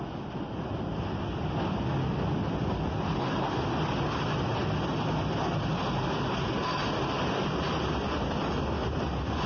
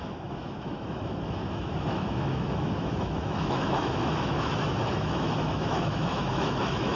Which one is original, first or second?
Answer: first